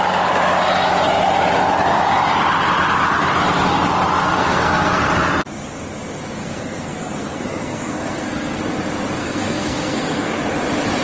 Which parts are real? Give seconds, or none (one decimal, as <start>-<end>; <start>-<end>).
0.0-4.2; 5.1-6.4; 8.6-9.2; 10.4-11.0